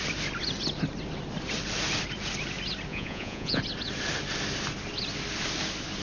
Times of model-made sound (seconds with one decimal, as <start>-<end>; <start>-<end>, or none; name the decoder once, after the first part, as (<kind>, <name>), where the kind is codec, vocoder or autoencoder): 2.9-3.6 (vocoder, Vocos)